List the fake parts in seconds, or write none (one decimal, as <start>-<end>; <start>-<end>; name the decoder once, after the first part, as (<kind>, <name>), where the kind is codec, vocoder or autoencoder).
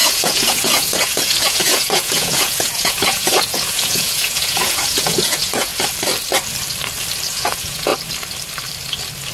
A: 0.0-5.7 (vocoder, Vocos); 7.3-7.9